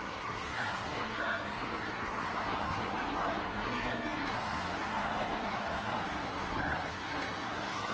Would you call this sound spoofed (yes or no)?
yes